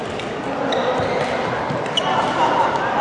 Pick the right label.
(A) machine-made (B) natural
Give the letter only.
B